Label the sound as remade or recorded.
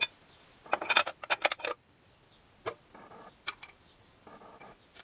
remade